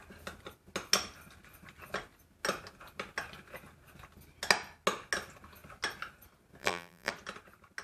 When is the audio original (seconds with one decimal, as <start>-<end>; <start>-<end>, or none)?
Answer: 0.0-6.6; 7.1-7.8